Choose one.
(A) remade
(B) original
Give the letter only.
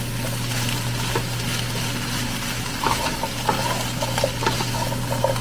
B